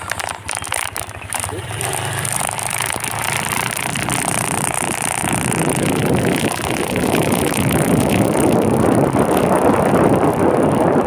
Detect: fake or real fake